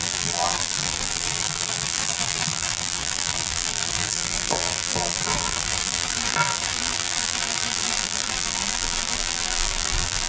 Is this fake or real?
fake